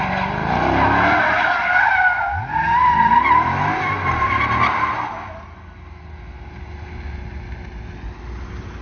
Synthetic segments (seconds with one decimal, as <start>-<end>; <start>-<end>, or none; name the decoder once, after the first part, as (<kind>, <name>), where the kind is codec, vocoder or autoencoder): none